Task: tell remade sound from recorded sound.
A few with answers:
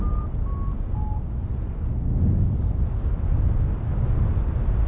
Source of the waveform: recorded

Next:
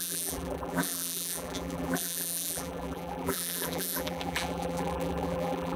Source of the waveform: remade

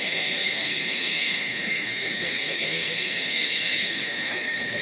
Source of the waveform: remade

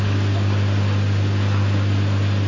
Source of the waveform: recorded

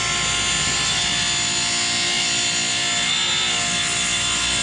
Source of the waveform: recorded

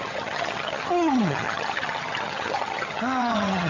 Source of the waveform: remade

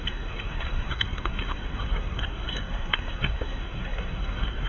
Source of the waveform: remade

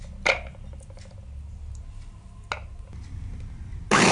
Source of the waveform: recorded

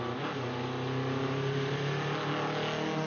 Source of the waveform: recorded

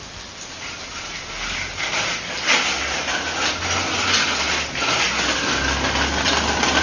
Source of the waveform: recorded